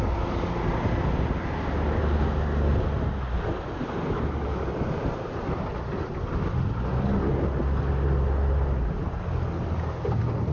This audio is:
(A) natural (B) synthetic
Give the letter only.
A